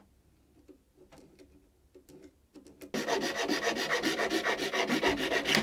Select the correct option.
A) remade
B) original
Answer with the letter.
B